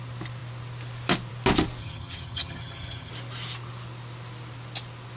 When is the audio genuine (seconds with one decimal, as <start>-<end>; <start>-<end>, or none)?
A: 0.0-1.8; 3.1-5.2